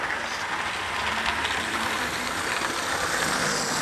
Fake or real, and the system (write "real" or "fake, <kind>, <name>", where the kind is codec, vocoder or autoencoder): real